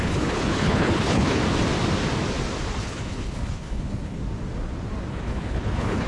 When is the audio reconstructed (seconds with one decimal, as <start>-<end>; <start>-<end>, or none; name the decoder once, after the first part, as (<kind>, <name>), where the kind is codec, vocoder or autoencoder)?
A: 0.0-1.4 (codec, HILCodec); 2.8-4.2; 5.1-6.1